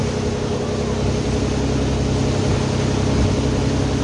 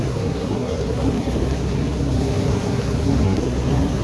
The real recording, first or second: first